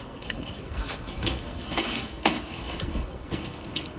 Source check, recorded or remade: remade